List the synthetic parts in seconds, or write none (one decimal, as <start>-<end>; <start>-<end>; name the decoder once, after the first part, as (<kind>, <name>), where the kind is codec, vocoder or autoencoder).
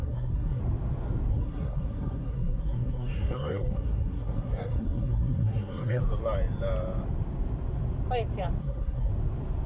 0.0-0.6 (codec, SNAC); 1.3-6.0; 8.6-9.1